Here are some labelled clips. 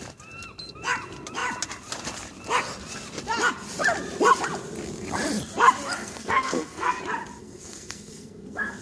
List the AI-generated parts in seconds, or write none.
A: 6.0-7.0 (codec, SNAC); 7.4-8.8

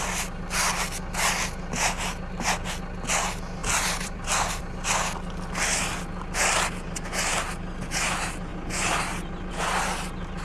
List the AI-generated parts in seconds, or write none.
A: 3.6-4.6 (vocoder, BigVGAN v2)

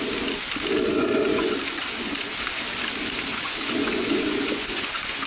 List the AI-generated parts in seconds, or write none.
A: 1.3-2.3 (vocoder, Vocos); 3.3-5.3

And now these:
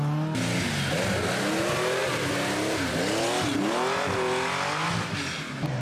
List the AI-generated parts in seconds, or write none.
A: none

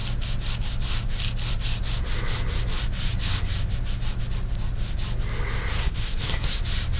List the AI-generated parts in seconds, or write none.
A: 5.7-6.6 (codec, SNAC)

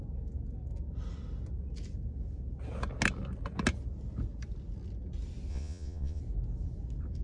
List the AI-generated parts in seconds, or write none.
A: 5.5-6.2 (vocoder, Vocos)